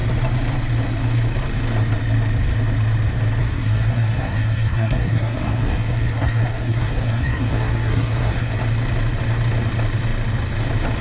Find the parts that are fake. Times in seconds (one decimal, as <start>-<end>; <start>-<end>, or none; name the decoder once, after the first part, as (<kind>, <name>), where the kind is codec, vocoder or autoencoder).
3.4-8.5 (codec, SNAC)